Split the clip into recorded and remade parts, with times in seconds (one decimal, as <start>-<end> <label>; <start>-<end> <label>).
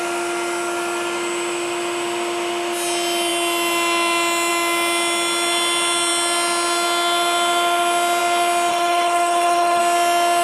0.0-8.7 recorded; 8.7-9.8 remade; 9.8-10.4 recorded